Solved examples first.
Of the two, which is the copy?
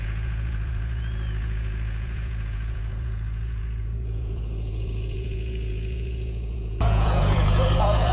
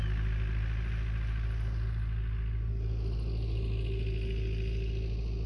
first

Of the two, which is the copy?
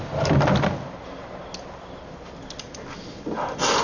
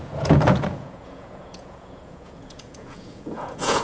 second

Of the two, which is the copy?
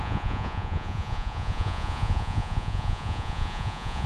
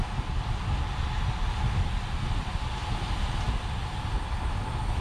first